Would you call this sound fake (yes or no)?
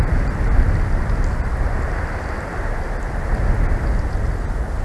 no